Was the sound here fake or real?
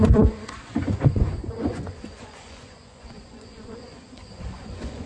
fake